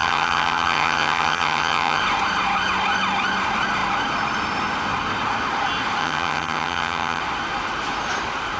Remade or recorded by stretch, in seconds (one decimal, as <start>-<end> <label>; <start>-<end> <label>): 0.0-2.0 remade; 2.0-6.0 recorded; 6.0-7.2 remade; 7.2-8.6 recorded